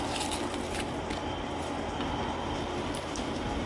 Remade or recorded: recorded